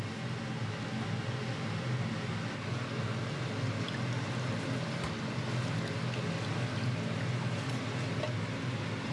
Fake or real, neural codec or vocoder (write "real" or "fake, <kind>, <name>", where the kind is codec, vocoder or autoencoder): real